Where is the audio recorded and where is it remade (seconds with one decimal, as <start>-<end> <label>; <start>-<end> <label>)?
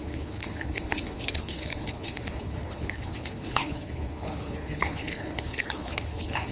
0.0-6.5 remade